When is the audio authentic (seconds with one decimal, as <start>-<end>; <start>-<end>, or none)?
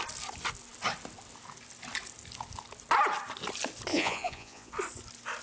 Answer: 0.0-3.9; 4.7-5.4